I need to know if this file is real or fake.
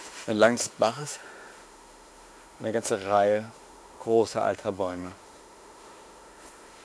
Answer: fake